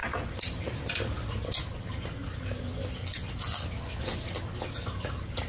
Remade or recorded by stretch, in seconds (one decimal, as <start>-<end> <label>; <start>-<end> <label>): 0.0-5.5 recorded